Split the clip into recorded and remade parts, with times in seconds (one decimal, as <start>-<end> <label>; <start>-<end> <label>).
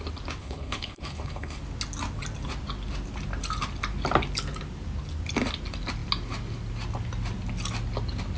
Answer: 0.0-0.4 recorded; 0.4-1.6 remade; 1.6-8.4 recorded